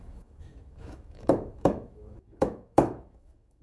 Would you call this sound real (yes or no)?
no